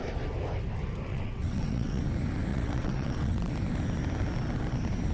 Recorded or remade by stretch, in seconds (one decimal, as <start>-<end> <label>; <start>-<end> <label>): 0.0-1.1 recorded; 1.1-2.0 remade; 2.0-2.5 recorded; 2.5-3.5 remade; 3.5-5.1 recorded